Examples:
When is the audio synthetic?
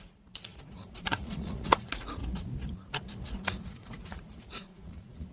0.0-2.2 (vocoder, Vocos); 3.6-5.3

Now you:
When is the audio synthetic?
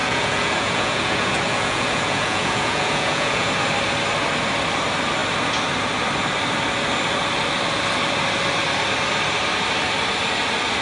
0.0-3.5 (vocoder, Vocos)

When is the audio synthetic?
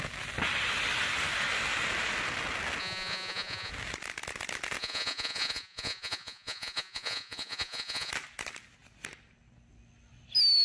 2.8-3.7 (vocoder, Vocos); 4.8-8.1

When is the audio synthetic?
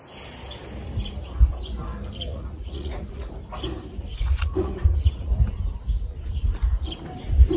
2.3-3.3 (vocoder, Vocos); 4.1-5.3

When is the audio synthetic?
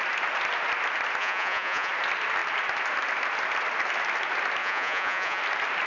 1.2-1.9 (vocoder, Vocos); 4.6-5.4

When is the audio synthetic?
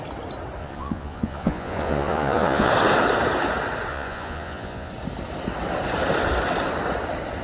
0.6-2.7 (vocoder, Vocos); 3.9-4.9